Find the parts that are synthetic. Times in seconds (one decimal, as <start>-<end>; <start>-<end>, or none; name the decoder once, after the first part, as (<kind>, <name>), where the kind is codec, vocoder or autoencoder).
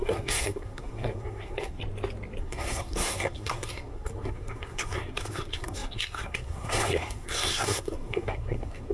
0.0-1.8 (codec, SNAC); 2.4-8.9